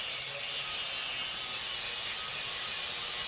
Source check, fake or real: real